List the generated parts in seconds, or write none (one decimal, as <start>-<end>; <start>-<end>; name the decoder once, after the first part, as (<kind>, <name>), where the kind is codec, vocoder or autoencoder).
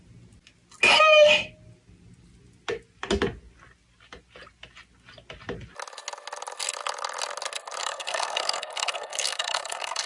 7.8-10.1 (codec, SNAC)